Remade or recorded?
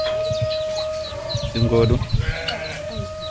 recorded